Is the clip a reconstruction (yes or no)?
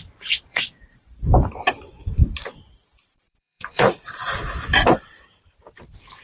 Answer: yes